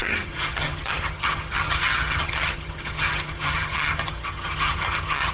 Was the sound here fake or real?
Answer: fake